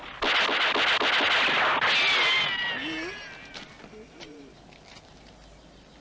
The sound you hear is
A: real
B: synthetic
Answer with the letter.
A